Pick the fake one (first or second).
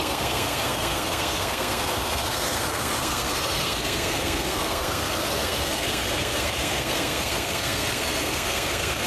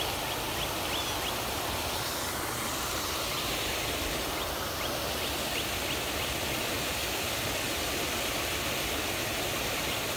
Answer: first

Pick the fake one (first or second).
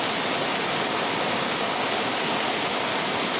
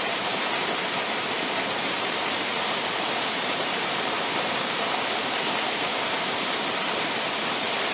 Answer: second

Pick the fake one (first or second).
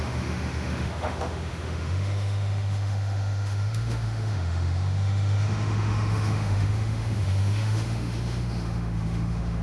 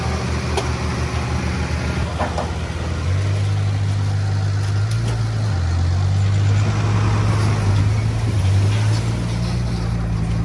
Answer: first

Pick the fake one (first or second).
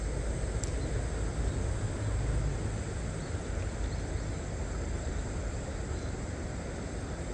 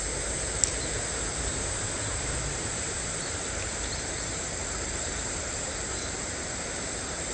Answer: second